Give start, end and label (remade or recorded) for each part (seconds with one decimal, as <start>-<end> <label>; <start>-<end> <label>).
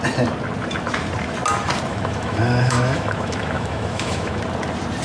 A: 0.0-1.9 recorded; 1.9-4.4 remade; 4.4-5.0 recorded